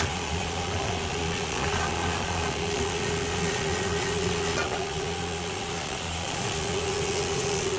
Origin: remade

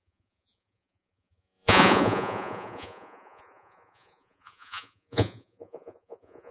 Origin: remade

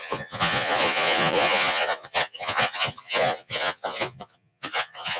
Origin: remade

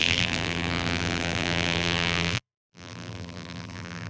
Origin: remade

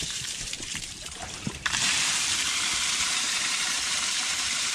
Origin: remade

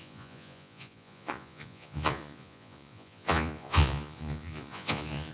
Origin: remade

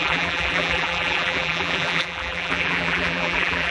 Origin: remade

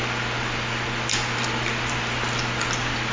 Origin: recorded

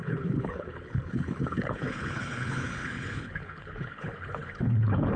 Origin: remade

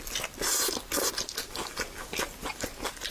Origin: recorded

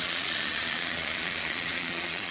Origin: remade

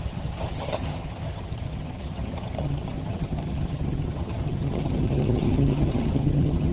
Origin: remade